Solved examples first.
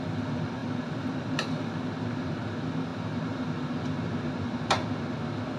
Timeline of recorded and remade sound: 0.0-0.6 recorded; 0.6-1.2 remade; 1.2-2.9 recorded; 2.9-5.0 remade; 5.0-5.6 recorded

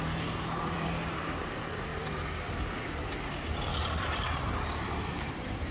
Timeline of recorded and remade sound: 0.0-1.9 remade; 1.9-5.3 recorded; 5.3-5.7 remade

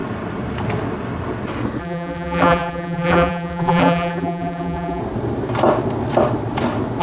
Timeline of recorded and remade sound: 0.0-1.8 recorded; 1.8-5.0 remade; 5.0-7.0 recorded

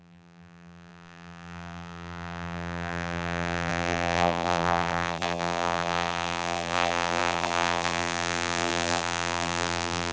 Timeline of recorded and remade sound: 0.0-10.1 remade

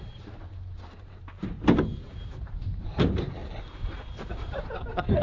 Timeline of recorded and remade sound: 0.0-3.4 remade; 3.4-4.3 recorded; 4.3-5.2 remade

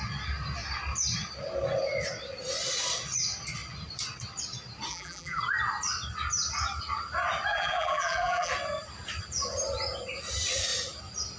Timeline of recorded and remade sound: 0.0-4.9 recorded; 4.9-5.4 remade; 5.4-7.5 recorded; 7.5-8.5 remade; 8.5-11.4 recorded

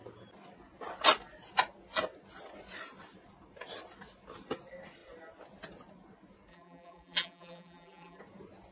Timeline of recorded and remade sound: 0.0-6.5 recorded; 6.5-8.2 remade; 8.2-8.7 recorded